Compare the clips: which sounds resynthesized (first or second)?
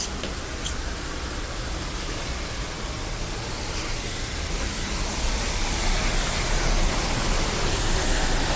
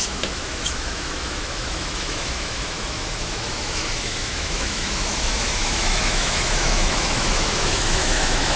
second